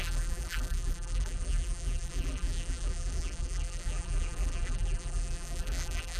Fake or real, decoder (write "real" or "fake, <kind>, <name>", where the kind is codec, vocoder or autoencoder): fake, vocoder, BigVGAN v2